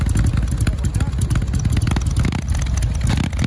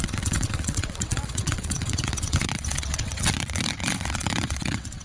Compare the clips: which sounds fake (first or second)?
second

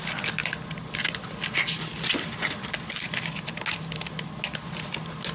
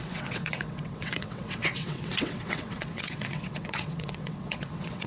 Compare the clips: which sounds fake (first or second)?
second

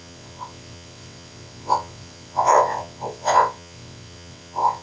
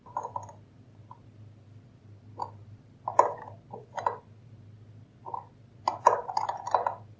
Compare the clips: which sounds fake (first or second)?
first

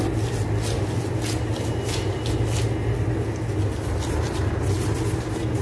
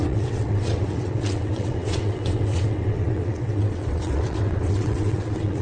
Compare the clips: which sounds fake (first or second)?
second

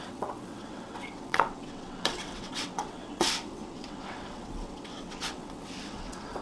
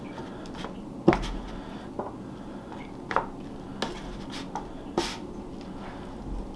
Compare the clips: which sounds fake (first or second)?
first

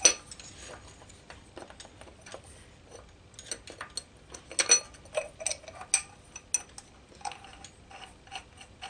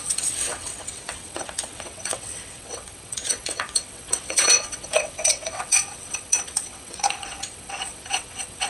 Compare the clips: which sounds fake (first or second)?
second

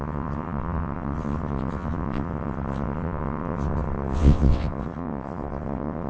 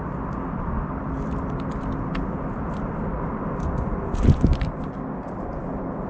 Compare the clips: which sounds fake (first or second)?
first